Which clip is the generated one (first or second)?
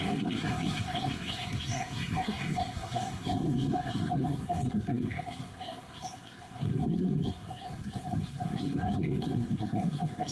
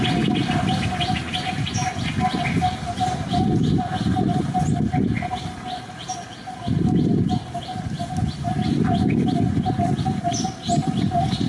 first